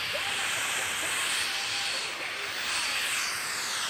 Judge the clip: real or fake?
real